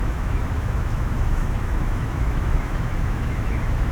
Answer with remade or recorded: remade